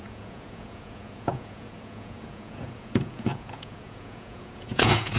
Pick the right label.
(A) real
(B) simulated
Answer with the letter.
B